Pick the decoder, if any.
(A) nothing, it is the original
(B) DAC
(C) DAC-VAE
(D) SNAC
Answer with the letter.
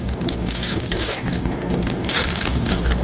B